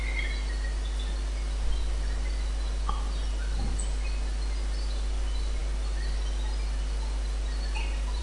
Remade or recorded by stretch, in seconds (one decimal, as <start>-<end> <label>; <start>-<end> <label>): 0.0-8.2 recorded